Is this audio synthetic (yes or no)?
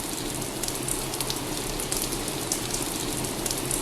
no